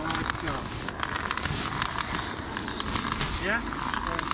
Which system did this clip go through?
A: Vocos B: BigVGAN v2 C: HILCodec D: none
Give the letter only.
D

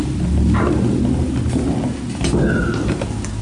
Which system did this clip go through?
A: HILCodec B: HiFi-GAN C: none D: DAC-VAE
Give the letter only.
C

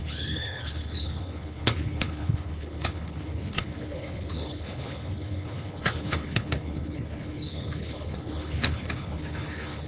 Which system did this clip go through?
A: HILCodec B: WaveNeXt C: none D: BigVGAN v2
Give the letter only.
A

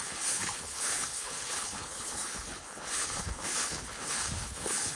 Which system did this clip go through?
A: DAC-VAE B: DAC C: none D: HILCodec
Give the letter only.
D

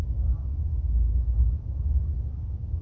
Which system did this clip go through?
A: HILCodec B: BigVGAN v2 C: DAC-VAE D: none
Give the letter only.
D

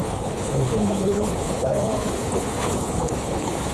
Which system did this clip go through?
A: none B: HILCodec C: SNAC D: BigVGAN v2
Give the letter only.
B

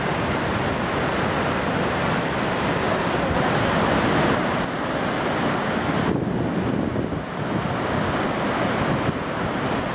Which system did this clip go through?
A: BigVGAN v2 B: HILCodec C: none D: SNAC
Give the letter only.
C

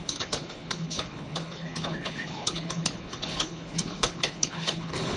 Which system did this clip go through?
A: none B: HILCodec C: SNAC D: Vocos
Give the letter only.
B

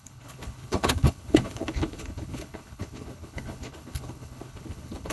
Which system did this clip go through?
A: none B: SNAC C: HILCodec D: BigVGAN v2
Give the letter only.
C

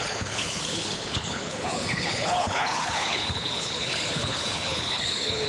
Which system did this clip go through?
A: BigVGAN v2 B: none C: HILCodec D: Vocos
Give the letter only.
C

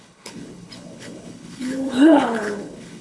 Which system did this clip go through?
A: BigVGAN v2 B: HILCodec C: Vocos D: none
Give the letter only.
B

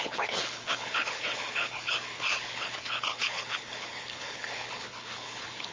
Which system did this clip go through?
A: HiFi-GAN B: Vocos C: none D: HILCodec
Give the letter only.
D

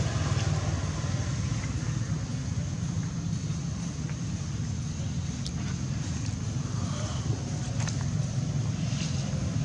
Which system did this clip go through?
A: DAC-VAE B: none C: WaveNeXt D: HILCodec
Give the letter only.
B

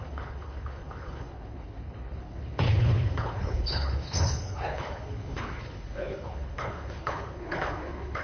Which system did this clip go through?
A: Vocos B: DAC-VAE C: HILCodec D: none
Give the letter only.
C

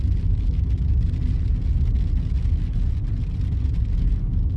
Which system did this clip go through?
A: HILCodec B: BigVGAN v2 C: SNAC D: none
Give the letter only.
D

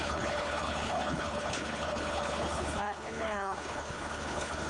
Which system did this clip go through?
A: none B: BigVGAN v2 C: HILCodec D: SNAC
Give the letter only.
C